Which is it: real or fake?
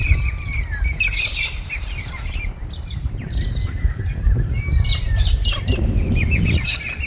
real